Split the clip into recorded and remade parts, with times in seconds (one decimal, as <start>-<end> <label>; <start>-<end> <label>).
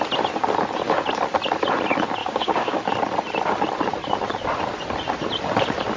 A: 0.0-2.2 recorded; 2.2-2.8 remade; 2.8-6.0 recorded